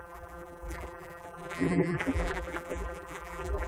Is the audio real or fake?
fake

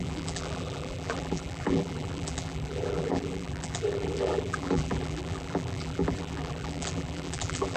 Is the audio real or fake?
fake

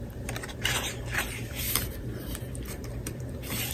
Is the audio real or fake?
fake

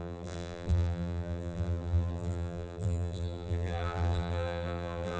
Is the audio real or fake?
fake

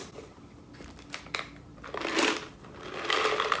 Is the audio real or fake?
fake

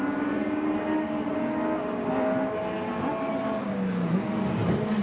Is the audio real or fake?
real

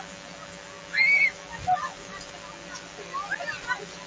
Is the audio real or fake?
real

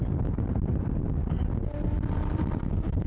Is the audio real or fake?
fake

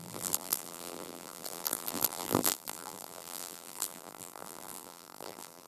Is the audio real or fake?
fake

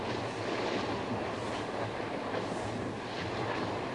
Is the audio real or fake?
real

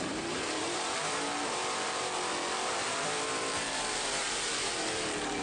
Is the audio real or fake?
fake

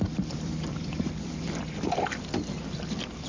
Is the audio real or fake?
fake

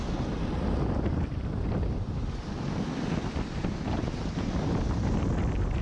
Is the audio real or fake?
real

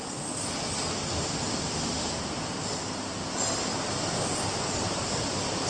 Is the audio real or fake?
real